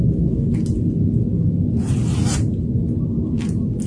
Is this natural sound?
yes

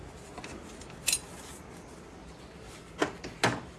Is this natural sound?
yes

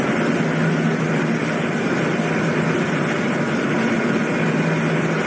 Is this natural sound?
yes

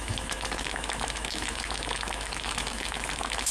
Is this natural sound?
no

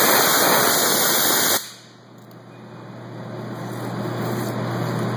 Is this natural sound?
yes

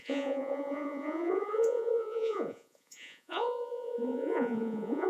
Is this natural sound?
no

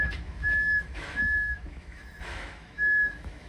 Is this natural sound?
no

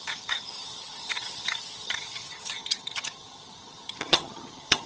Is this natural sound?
no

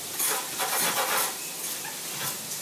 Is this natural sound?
yes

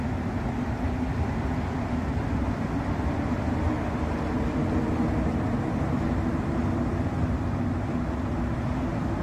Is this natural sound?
yes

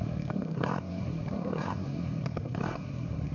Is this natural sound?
no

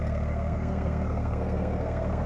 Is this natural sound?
no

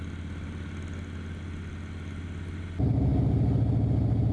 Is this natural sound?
yes